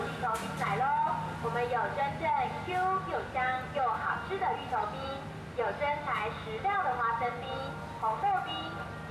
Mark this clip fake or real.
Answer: real